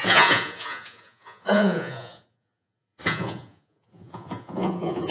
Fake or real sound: fake